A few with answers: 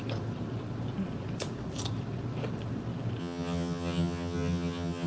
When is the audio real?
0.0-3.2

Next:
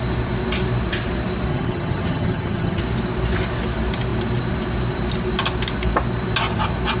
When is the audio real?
0.0-1.5; 2.8-7.0

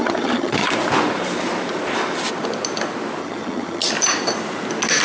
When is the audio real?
0.7-3.2; 3.9-5.0